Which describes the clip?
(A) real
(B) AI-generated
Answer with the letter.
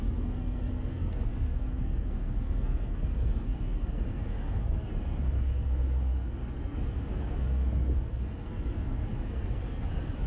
B